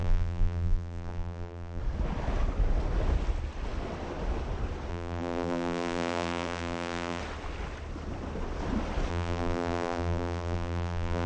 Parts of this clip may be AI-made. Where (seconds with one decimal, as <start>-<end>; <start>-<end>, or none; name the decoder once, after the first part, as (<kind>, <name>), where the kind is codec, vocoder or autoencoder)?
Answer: 0.0-1.8 (vocoder, BigVGAN v2); 4.9-7.2; 9.1-11.3